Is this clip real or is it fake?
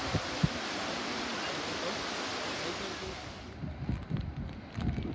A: real